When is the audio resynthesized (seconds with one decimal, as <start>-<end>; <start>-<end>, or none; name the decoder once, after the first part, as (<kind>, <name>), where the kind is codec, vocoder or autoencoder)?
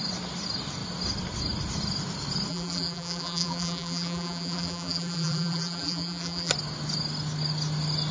2.5-6.5 (vocoder, BigVGAN v2)